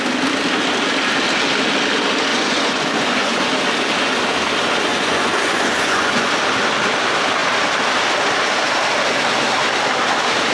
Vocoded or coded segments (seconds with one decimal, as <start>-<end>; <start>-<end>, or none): 2.3-3.5; 4.9-6.3